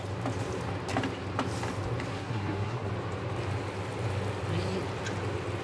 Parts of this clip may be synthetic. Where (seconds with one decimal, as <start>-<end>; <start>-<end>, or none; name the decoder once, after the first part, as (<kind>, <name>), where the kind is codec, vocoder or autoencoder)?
2.1-2.9 (codec, SNAC)